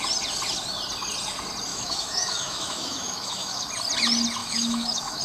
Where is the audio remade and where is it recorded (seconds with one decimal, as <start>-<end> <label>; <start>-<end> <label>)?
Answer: 0.0-1.7 recorded; 1.7-3.7 remade; 3.7-4.4 recorded; 4.4-5.2 remade

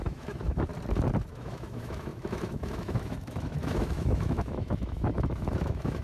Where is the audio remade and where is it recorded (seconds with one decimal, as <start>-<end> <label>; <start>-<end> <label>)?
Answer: 0.0-0.7 remade; 0.7-1.3 recorded; 1.3-6.0 remade

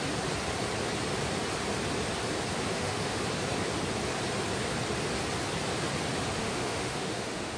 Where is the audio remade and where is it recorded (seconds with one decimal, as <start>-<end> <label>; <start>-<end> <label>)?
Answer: 0.0-2.7 recorded; 2.7-3.2 remade; 3.2-6.4 recorded; 6.4-7.6 remade

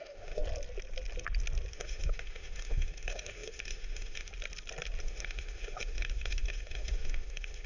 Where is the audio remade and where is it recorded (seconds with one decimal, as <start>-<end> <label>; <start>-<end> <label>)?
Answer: 0.0-0.4 remade; 0.4-1.7 recorded; 1.7-4.3 remade; 4.3-5.0 recorded; 5.0-7.7 remade

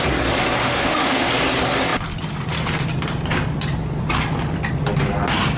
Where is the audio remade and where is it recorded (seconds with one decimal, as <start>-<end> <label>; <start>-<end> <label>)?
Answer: 0.0-0.6 recorded; 0.6-1.3 remade; 1.3-5.6 recorded

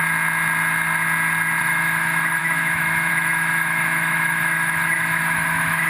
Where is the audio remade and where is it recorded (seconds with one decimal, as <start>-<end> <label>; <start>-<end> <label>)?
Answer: 0.0-1.6 recorded; 1.6-5.9 remade

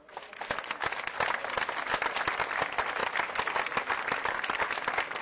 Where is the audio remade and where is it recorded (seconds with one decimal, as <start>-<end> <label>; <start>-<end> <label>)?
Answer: 0.0-5.2 recorded

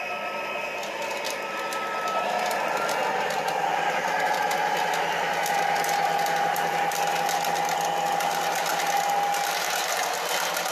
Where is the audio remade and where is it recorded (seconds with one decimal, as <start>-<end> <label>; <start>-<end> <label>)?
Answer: 0.0-10.7 recorded